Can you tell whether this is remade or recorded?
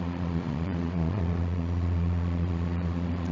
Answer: remade